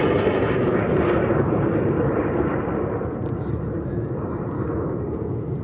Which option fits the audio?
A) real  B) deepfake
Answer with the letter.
B